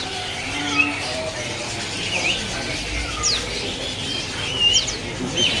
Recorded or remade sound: recorded